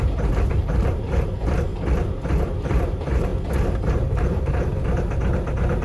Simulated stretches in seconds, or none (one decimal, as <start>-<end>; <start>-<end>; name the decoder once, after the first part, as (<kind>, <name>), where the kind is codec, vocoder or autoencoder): 0.0-1.7 (vocoder, BigVGAN v2); 2.6-3.3; 3.8-4.7

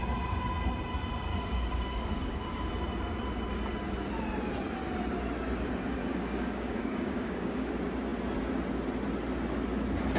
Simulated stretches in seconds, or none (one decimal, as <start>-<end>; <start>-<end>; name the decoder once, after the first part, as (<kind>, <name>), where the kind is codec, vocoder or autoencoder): 1.3-2.7 (codec, DAC); 6.0-7.7

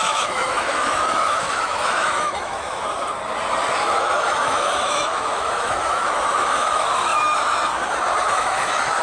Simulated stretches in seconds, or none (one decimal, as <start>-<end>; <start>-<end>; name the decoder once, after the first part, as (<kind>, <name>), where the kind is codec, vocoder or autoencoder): 0.0-2.8 (autoencoder, DAC-VAE); 3.7-7.1; 8.3-9.0

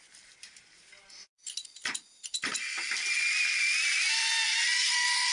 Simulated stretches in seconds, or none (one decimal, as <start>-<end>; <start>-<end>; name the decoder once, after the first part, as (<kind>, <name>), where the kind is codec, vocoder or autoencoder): none

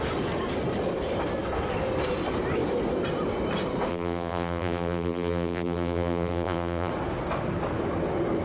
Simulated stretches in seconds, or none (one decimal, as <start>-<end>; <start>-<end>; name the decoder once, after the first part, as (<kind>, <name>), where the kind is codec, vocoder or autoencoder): 3.9-6.9 (vocoder, BigVGAN v2)

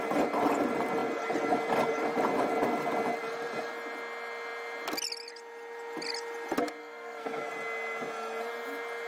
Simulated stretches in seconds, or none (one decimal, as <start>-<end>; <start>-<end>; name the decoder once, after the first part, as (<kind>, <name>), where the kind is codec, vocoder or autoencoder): 6.8-7.5 (codec, SNAC)